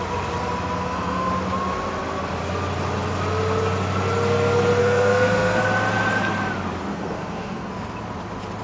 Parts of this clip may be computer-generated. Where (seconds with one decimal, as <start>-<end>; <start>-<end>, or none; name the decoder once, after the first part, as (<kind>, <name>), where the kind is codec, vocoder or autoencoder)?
0.8-1.3 (codec, SNAC); 4.8-5.6; 6.9-7.7